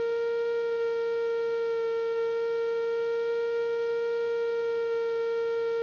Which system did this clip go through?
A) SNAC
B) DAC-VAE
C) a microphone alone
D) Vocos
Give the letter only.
C